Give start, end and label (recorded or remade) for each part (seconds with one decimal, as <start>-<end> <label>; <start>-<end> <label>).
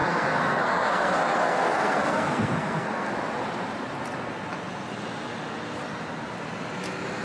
0.0-3.1 remade; 3.1-7.2 recorded